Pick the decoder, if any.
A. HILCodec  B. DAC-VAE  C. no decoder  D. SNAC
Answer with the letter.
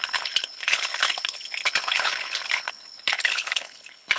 A